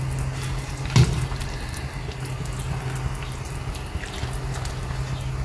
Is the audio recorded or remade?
recorded